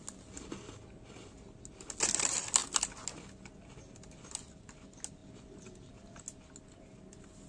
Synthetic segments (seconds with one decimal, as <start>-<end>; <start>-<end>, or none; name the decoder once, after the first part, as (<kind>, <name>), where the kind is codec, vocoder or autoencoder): none